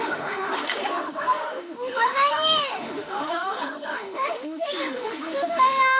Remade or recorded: remade